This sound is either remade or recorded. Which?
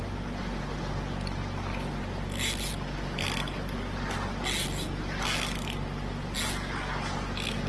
recorded